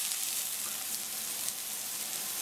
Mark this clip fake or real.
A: real